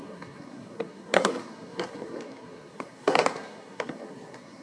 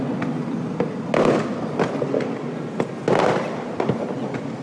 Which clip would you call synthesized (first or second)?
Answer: first